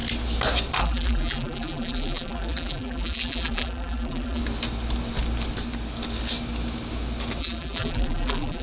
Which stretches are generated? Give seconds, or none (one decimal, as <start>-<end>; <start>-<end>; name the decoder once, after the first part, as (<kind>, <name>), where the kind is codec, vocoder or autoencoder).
0.8-4.4 (vocoder, BigVGAN v2); 7.4-8.6